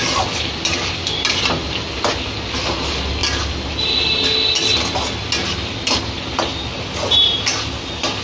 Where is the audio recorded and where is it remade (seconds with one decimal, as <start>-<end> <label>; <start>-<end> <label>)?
0.0-8.2 recorded